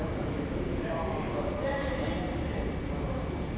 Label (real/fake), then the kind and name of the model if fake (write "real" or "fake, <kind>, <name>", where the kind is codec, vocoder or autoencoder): real